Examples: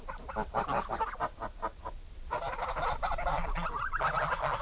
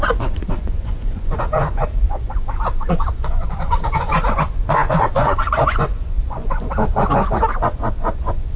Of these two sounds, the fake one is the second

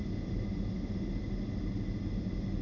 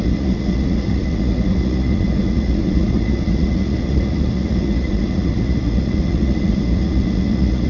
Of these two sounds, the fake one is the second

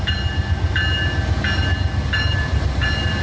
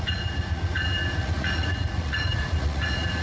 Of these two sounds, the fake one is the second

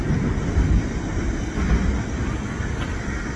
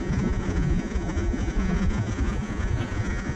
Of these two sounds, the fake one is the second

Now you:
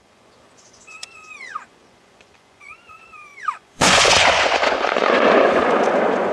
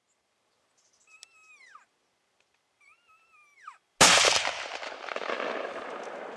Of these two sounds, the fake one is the first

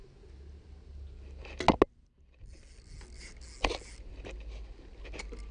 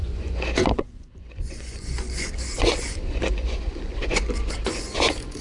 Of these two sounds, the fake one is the second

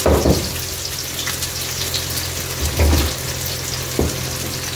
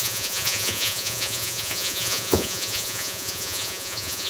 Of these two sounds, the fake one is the second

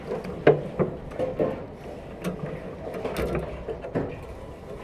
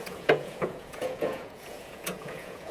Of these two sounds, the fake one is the second